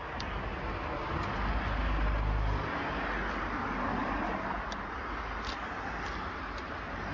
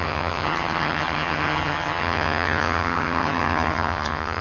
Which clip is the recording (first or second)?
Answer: first